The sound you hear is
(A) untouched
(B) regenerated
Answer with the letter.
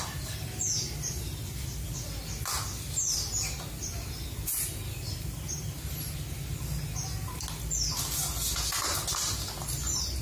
A